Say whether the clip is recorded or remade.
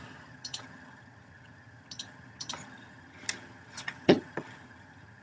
remade